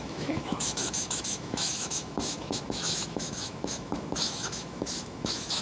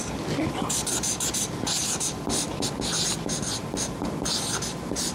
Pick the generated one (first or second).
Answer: first